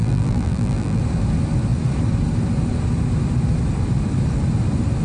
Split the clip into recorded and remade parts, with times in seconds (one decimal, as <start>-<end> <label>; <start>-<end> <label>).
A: 0.0-1.0 remade; 1.0-5.0 recorded